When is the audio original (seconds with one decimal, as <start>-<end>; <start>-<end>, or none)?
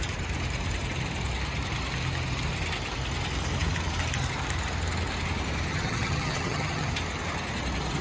0.0-5.7; 6.9-8.0